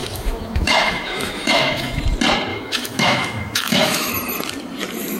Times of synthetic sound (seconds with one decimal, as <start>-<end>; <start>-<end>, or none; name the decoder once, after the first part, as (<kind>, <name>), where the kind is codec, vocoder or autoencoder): 0.0-2.0 (autoencoder, DAC-VAE); 2.5-4.1